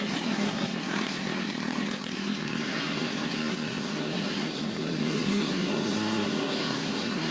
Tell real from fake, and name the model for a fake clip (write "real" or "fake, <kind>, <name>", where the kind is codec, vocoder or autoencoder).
fake, codec, SNAC